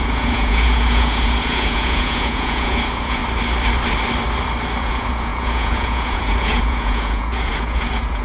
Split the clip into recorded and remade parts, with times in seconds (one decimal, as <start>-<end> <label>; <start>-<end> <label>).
0.0-3.2 remade; 3.2-4.8 recorded; 4.8-8.2 remade